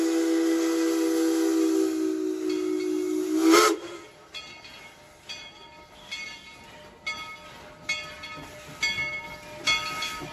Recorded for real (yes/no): yes